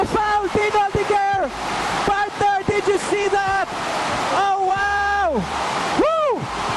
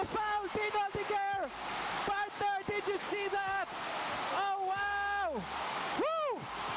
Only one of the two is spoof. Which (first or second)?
first